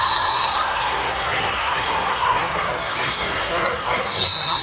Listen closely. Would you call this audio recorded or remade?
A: remade